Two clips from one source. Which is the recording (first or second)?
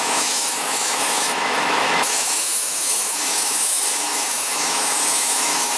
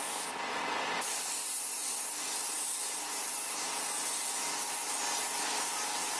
second